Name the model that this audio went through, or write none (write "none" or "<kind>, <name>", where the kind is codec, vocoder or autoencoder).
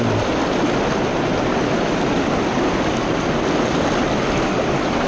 none